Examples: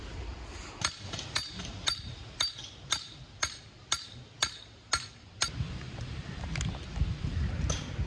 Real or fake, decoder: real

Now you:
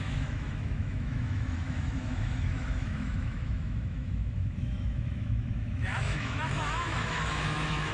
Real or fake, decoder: fake, autoencoder, DAC-VAE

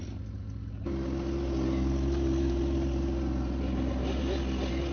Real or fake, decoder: real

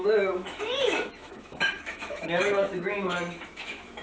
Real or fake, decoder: fake, autoencoder, DAC-VAE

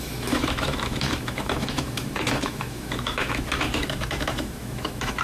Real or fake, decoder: fake, autoencoder, DAC-VAE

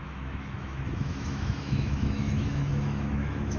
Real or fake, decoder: fake, autoencoder, DAC-VAE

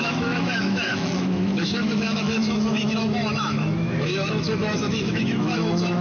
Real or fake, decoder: fake, autoencoder, DAC-VAE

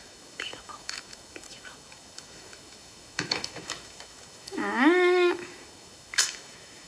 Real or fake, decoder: fake, autoencoder, DAC-VAE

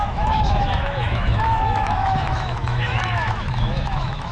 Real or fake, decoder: fake, autoencoder, DAC-VAE